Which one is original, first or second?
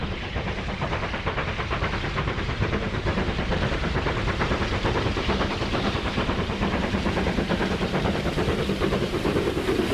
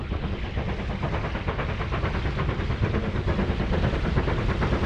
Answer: second